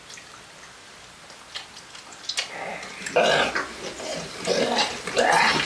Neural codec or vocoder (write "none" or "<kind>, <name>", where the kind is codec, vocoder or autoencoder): none